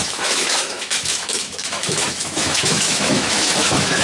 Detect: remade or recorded remade